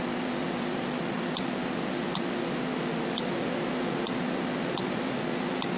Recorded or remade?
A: remade